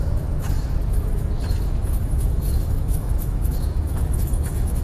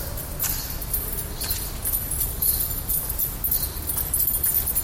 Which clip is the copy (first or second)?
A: first